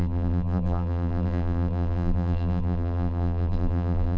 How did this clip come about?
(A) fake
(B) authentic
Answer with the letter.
A